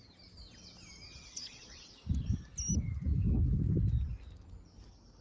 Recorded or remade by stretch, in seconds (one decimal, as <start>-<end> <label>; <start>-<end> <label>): 0.0-1.2 recorded; 1.2-1.8 remade; 1.8-5.2 recorded